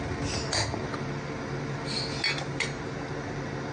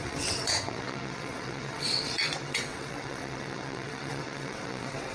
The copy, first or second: second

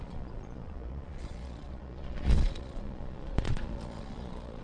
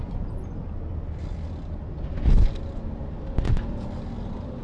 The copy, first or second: first